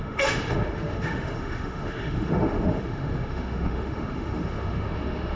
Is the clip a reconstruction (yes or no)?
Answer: yes